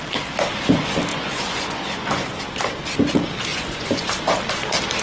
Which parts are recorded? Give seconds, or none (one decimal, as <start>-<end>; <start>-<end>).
0.0-1.1; 2.4-3.5; 4.1-5.0